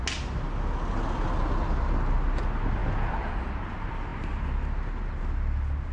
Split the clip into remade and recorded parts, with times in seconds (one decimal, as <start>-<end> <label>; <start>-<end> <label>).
0.0-5.9 recorded